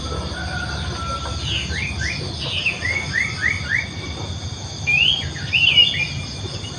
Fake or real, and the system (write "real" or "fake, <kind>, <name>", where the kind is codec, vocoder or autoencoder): real